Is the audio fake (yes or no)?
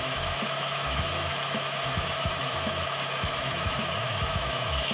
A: yes